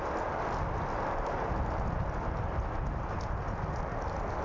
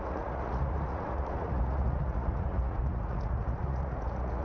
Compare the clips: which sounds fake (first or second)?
second